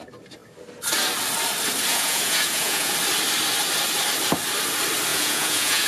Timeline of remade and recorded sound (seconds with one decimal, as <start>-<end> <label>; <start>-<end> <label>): 0.0-1.9 recorded; 1.9-2.9 remade; 2.9-5.1 recorded; 5.1-5.9 remade